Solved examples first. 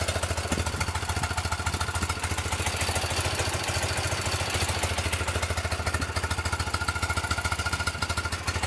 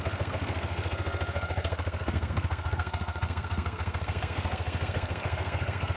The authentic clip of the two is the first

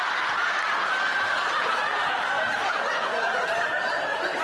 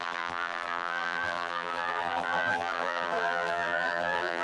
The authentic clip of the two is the first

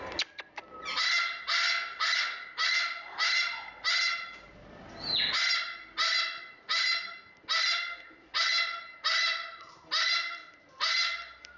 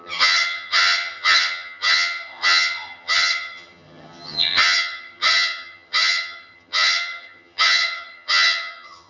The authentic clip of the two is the first